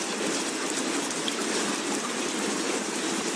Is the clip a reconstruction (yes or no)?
no